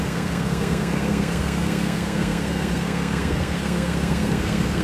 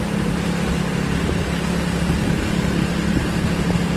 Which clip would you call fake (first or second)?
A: first